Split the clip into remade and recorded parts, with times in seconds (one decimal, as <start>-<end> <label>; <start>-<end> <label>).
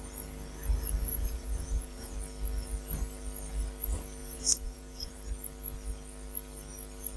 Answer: 0.0-1.1 recorded; 1.1-2.1 remade; 2.1-4.2 recorded; 4.2-5.1 remade; 5.1-7.2 recorded